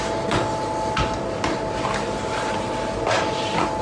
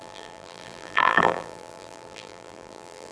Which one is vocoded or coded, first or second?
second